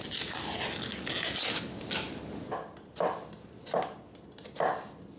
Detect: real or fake real